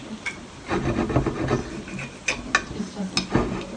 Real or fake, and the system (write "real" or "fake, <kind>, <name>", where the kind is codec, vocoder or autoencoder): real